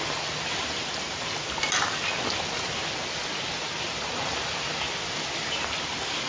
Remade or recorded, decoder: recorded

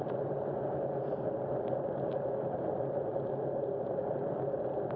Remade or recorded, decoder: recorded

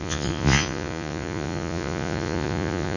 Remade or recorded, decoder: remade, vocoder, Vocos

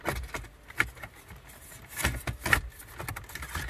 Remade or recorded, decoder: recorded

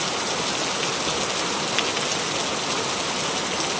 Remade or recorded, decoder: recorded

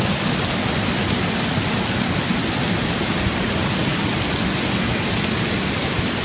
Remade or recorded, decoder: recorded